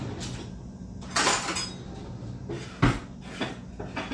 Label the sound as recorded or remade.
recorded